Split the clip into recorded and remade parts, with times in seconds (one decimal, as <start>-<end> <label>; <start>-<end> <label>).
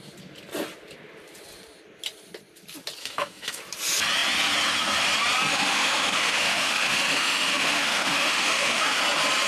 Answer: 0.0-3.0 recorded; 3.0-3.6 remade; 3.6-5.5 recorded; 5.5-9.0 remade; 9.0-9.5 recorded